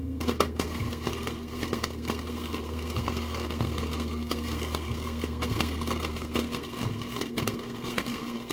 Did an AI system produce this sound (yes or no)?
yes